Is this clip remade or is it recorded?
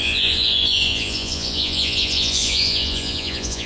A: remade